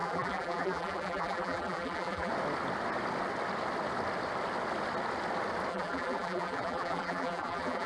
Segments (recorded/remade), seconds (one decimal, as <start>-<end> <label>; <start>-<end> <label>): 0.0-2.3 remade; 2.3-5.7 recorded; 5.7-7.9 remade